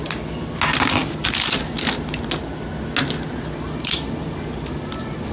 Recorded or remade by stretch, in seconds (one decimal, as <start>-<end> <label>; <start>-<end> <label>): 0.0-5.3 recorded